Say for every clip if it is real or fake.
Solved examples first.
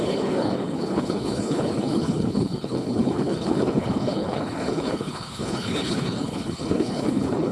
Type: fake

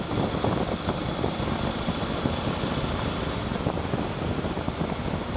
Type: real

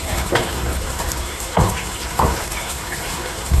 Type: fake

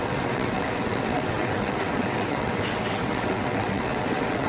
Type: fake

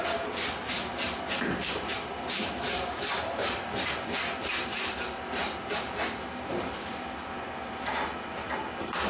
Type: fake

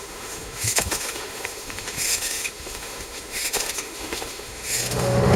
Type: fake